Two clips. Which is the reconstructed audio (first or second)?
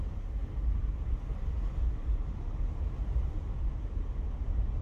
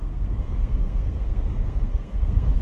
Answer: second